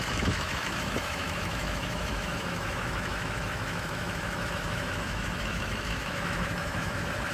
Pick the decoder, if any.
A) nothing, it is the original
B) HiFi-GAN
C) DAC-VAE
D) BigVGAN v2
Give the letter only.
C